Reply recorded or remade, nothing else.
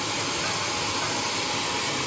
recorded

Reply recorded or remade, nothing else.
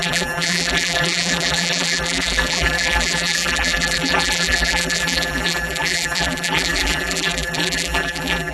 remade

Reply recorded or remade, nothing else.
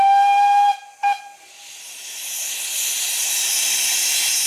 recorded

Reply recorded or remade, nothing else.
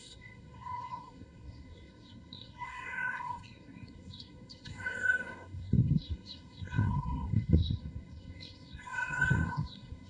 remade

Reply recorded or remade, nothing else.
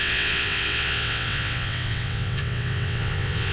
remade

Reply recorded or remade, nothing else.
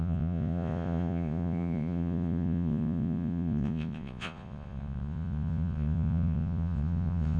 remade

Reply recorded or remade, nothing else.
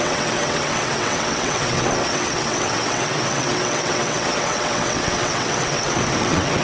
remade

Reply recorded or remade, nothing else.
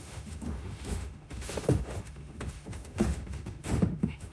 remade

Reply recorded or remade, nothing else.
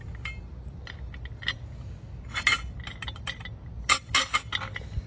recorded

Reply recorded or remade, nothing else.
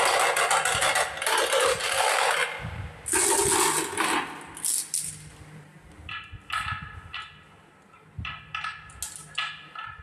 recorded